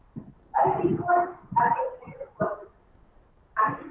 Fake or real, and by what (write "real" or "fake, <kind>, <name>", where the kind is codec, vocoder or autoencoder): fake, vocoder, BigVGAN v2